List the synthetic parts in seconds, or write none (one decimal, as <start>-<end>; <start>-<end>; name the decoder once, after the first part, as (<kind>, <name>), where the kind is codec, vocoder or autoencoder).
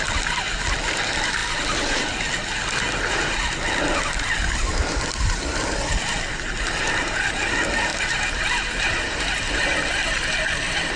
7.9-9.5 (vocoder, BigVGAN v2)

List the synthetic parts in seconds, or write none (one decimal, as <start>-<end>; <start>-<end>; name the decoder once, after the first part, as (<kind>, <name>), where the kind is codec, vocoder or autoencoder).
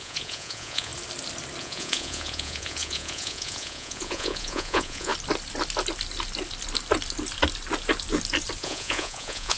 0.0-0.9 (vocoder, Vocos); 1.6-5.1; 8.6-9.6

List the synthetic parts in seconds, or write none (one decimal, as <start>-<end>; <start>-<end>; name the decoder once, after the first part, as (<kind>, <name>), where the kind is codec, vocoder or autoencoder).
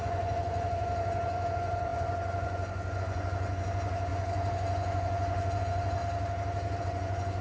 0.0-6.0 (vocoder, Vocos); 6.8-7.4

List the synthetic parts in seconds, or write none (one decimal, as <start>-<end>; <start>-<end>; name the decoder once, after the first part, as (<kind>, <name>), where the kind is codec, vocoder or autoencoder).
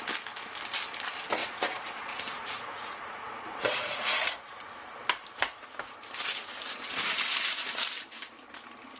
1.4-4.6 (vocoder, Vocos)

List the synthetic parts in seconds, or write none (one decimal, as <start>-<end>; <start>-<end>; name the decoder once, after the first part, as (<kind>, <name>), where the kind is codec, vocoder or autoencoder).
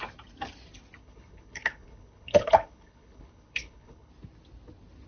1.0-4.1 (codec, HILCodec)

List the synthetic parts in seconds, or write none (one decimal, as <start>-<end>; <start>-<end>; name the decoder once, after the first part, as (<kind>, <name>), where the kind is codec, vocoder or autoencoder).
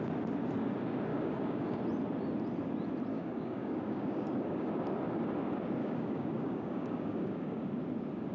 1.1-1.8 (codec, DAC); 3.1-4.7; 5.8-7.6